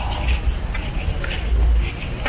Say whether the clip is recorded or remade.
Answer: recorded